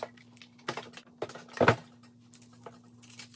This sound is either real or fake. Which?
real